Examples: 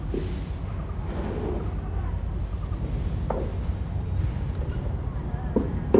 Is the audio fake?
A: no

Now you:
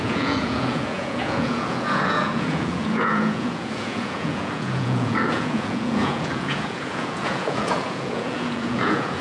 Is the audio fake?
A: yes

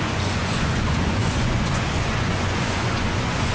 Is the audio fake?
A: yes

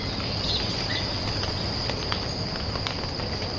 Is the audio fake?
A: no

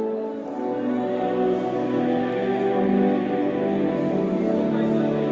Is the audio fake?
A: no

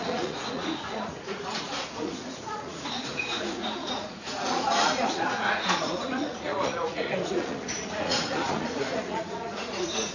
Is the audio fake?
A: yes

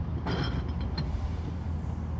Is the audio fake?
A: no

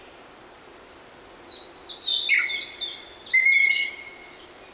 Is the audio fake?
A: no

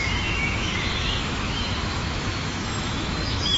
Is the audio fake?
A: yes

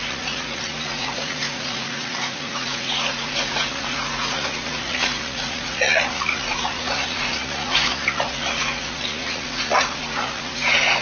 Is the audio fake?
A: yes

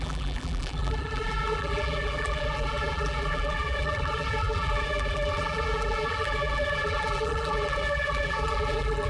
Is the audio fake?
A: yes